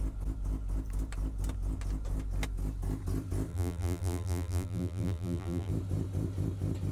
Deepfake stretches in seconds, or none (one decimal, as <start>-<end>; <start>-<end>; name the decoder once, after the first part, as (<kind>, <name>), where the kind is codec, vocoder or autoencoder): 3.5-5.7 (vocoder, BigVGAN v2)